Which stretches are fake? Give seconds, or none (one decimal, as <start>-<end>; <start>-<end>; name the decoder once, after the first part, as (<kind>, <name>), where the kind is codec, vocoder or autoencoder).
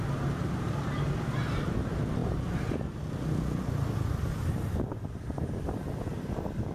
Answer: none